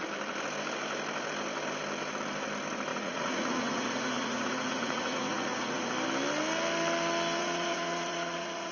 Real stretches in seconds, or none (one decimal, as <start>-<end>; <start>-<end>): 0.0-2.9; 5.9-7.4